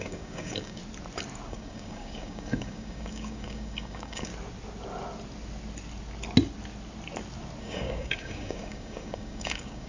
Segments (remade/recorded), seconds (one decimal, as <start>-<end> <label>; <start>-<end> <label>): 0.0-0.8 remade; 0.8-1.5 recorded; 1.5-4.3 remade; 4.3-7.6 recorded; 7.6-9.9 remade